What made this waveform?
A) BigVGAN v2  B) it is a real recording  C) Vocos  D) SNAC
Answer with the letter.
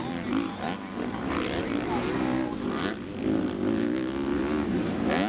B